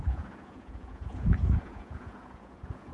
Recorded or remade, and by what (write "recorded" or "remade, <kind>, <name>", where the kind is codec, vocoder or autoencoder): remade, vocoder, Vocos